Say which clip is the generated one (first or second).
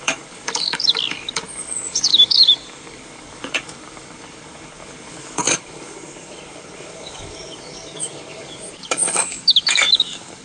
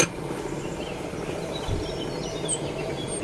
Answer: first